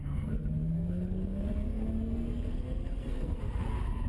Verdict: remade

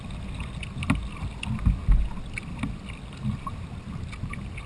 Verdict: recorded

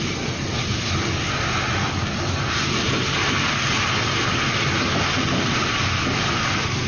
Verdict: recorded